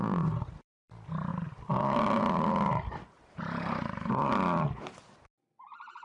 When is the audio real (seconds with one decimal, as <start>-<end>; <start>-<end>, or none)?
0.0-1.3; 3.4-6.0